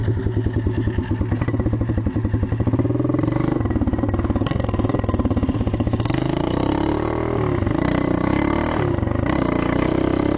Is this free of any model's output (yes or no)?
yes